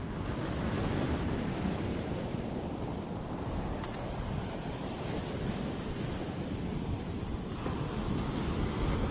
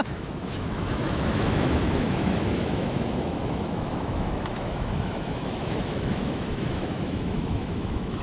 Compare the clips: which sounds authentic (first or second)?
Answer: first